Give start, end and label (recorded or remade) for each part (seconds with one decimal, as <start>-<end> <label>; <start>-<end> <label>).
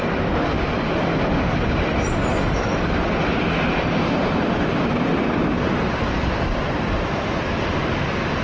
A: 0.0-2.3 recorded; 2.3-3.1 remade; 3.1-8.4 recorded